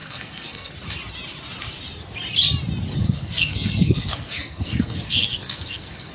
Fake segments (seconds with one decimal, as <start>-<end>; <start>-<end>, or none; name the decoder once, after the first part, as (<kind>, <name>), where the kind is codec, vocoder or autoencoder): 0.0-0.7 (codec, SNAC); 3.0-6.1